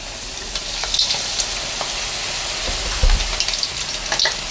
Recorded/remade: recorded